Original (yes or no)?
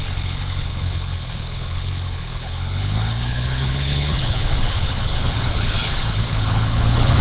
no